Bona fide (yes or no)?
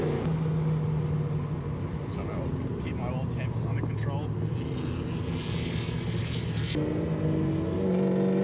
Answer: yes